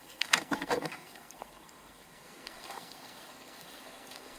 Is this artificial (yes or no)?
yes